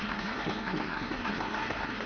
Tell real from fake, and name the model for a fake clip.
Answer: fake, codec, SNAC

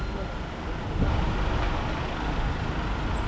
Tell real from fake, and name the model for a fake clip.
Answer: real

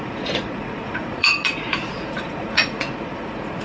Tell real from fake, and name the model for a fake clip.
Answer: fake, vocoder, Vocos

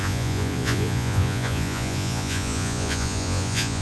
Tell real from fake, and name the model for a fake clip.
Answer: fake, vocoder, Vocos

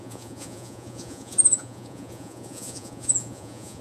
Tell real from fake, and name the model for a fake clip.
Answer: fake, vocoder, Vocos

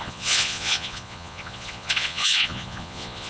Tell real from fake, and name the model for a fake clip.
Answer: fake, vocoder, Vocos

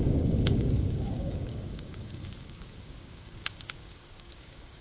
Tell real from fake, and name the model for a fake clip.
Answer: fake, codec, DAC